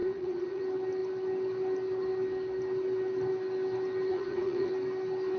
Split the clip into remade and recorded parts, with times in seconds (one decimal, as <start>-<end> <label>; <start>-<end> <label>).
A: 0.0-0.6 remade; 0.6-4.1 recorded; 4.1-4.7 remade; 4.7-5.4 recorded